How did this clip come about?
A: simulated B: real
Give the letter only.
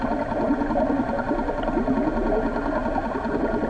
B